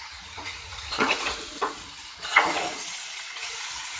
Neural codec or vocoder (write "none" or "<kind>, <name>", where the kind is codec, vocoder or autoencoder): vocoder, Vocos